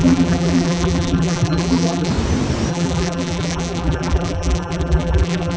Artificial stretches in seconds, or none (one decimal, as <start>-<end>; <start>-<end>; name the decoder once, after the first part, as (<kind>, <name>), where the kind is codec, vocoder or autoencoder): 0.0-2.1 (vocoder, BigVGAN v2); 2.7-5.6